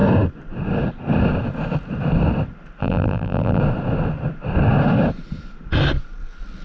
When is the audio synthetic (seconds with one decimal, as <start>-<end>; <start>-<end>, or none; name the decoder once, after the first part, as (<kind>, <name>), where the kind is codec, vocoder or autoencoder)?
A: 2.8-3.6 (vocoder, BigVGAN v2)